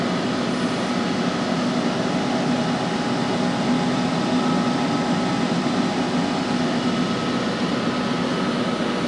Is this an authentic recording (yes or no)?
yes